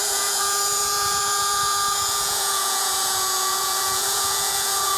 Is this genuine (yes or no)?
no